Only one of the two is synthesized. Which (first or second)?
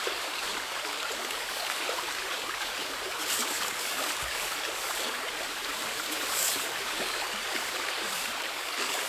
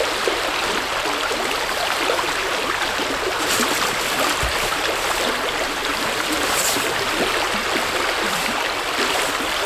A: first